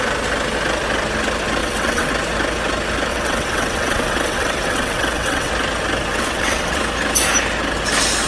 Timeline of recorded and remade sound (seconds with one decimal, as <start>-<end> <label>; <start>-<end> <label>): 0.0-1.6 recorded; 1.6-2.1 remade; 2.1-3.1 recorded; 3.1-5.5 remade; 5.5-6.1 recorded; 6.1-6.8 remade; 6.8-8.3 recorded